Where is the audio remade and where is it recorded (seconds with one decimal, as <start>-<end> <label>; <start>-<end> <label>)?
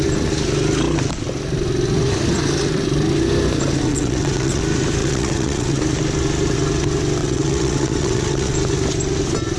0.0-3.9 recorded; 3.9-4.6 remade; 4.6-5.0 recorded; 5.0-5.8 remade; 5.8-7.2 recorded; 7.2-8.5 remade; 8.5-9.6 recorded